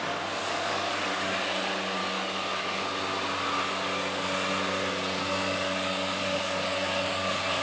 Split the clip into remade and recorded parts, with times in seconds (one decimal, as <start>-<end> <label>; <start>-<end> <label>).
0.0-0.4 recorded; 0.4-1.4 remade; 1.4-2.0 recorded; 2.0-2.8 remade; 2.8-5.3 recorded; 5.3-7.6 remade

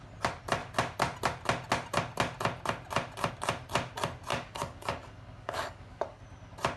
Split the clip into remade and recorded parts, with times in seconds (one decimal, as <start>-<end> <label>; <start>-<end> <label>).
0.0-4.3 recorded; 4.3-6.2 remade; 6.2-6.8 recorded